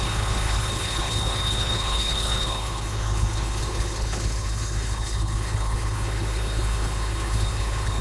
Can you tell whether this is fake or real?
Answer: fake